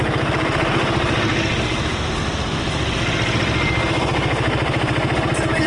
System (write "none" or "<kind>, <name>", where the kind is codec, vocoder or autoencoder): none